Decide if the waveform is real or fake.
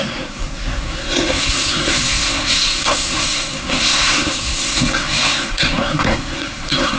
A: fake